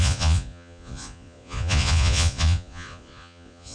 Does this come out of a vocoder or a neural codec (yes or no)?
yes